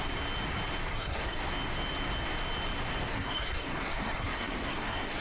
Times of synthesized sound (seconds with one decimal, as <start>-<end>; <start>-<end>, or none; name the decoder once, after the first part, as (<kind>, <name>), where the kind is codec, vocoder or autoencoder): 0.9-1.4 (codec, SNAC); 3.1-5.2